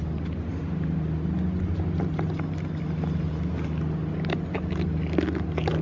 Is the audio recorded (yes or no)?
yes